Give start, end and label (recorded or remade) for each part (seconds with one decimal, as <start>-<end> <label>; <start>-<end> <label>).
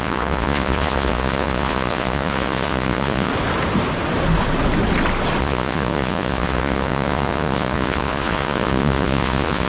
0.0-3.3 remade; 3.3-5.4 recorded; 5.4-9.7 remade